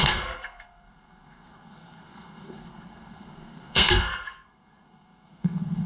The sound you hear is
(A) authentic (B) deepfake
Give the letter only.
B